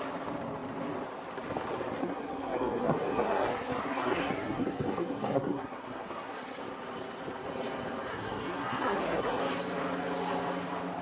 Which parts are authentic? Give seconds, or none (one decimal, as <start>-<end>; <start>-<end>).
0.0-2.0; 6.6-8.1; 9.4-11.0